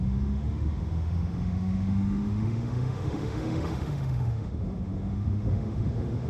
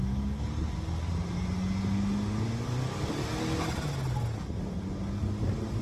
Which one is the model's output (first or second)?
first